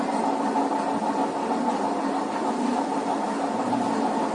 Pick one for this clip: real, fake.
real